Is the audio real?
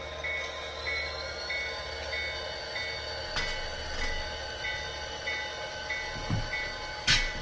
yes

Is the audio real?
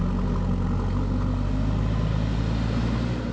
yes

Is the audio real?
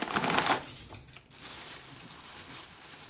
yes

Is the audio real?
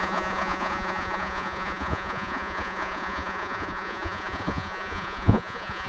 no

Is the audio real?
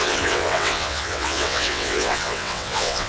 no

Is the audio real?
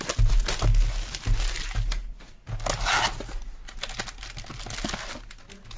yes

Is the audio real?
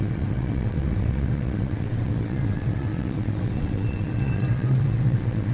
no